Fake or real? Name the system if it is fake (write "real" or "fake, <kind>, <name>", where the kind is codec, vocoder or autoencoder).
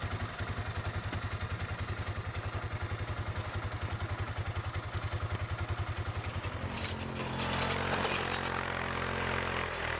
real